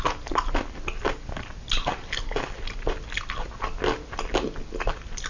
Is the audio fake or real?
real